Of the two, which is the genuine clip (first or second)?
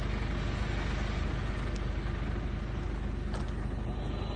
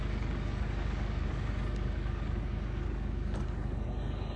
first